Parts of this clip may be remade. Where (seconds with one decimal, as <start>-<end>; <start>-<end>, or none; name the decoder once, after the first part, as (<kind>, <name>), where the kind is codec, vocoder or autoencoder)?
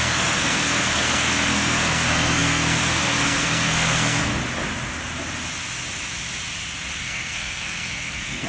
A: 0.0-4.3 (codec, SNAC); 7.0-8.5